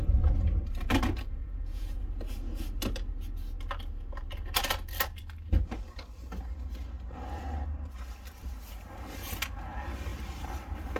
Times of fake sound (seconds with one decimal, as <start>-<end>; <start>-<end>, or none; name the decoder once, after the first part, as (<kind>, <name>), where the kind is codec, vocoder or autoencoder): 1.4-2.0 (vocoder, Vocos)